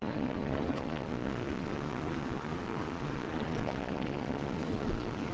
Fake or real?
fake